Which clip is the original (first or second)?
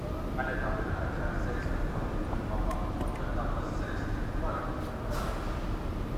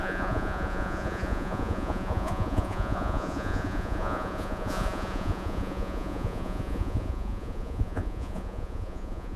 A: first